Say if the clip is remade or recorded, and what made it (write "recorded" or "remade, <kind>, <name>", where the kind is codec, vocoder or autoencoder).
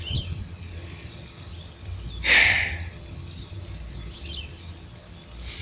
recorded